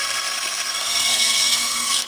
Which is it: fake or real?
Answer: fake